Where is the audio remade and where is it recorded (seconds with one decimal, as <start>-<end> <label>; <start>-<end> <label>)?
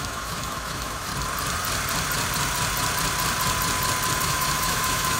0.0-1.1 remade; 1.1-4.2 recorded; 4.2-5.2 remade